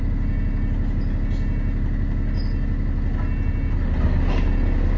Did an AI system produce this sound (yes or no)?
no